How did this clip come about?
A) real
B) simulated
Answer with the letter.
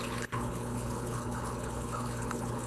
B